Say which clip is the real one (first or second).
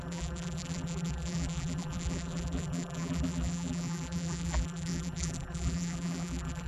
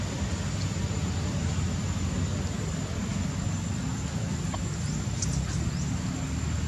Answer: second